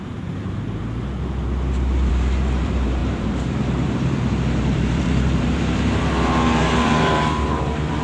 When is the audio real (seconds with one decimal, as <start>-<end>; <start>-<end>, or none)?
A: 0.8-2.1